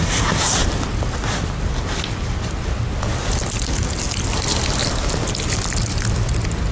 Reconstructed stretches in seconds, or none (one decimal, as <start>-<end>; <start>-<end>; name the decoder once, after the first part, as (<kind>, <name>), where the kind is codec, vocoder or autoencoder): none